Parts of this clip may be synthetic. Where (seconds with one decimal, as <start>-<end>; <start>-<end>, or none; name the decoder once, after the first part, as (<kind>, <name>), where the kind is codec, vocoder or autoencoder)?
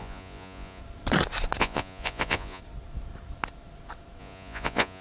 0.0-0.8 (vocoder, Vocos); 1.6-2.6; 4.2-5.0